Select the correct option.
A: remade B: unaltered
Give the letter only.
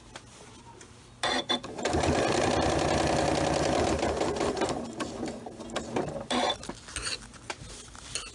B